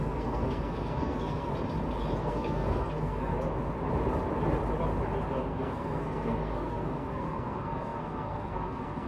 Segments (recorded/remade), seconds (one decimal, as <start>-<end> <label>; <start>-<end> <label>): 0.0-1.5 remade; 1.5-2.2 recorded; 2.2-3.3 remade; 3.3-5.4 recorded; 5.4-9.1 remade